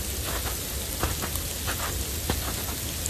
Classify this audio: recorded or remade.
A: recorded